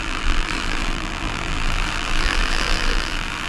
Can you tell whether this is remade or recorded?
remade